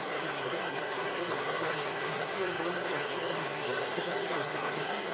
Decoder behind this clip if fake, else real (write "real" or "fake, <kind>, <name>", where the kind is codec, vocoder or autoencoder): fake, codec, SNAC